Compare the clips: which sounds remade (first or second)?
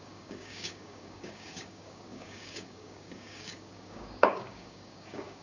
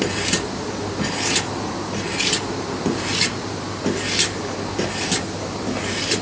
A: first